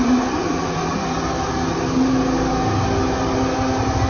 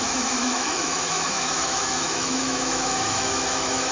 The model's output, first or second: second